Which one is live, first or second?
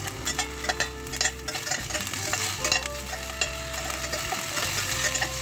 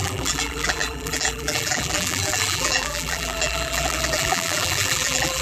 first